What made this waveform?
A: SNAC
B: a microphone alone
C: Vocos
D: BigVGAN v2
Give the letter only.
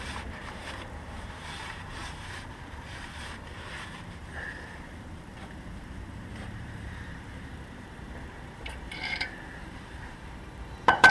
D